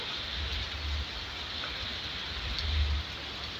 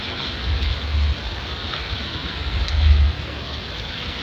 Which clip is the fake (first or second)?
second